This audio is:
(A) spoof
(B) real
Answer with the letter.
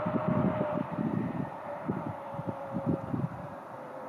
A